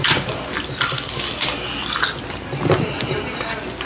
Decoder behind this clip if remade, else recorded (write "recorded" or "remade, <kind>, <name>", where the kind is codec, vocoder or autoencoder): recorded